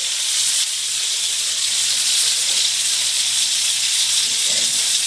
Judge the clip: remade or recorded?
remade